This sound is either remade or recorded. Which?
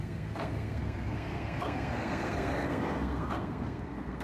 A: remade